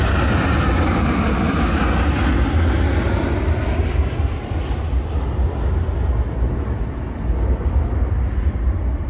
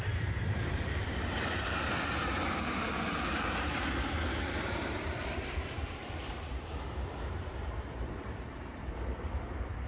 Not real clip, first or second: second